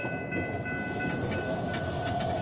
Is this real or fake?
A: real